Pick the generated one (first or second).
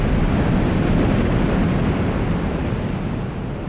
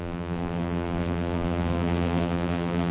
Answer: second